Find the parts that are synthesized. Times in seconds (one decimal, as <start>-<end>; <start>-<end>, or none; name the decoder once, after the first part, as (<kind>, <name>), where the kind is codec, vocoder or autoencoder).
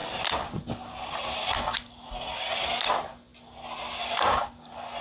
none